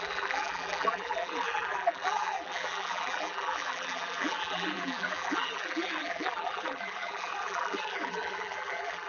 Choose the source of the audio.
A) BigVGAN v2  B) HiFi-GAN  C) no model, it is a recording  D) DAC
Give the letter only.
A